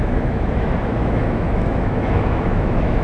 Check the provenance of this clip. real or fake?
fake